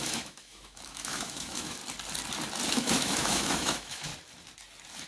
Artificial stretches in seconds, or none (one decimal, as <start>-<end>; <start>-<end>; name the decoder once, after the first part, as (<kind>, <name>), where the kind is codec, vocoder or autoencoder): 0.0-1.8 (autoencoder, DAC-VAE); 2.7-4.1